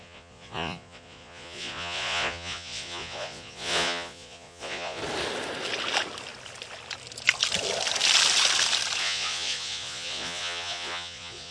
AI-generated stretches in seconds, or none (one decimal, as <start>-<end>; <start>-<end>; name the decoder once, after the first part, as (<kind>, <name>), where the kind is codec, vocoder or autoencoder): 0.0-5.0 (vocoder, Vocos); 9.0-11.5